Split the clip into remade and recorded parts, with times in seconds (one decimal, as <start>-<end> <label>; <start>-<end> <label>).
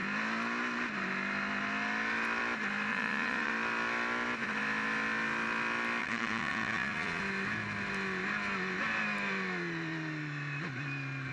0.0-2.9 recorded; 2.9-3.5 remade; 3.5-6.0 recorded; 6.0-7.2 remade; 7.2-11.3 recorded